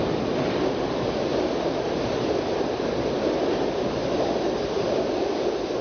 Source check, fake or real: fake